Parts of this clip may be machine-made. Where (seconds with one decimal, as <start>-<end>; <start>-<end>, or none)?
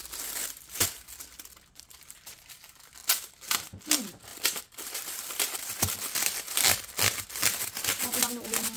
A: 3.0-3.5; 4.3-8.3